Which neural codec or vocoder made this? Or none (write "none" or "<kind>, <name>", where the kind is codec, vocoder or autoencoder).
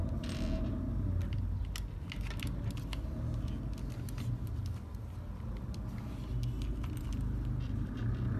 none